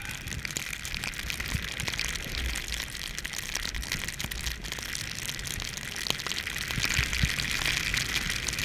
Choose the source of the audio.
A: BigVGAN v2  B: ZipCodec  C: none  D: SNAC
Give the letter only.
C